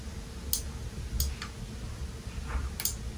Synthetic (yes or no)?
no